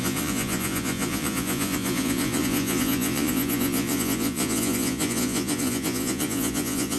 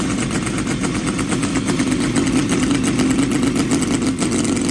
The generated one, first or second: first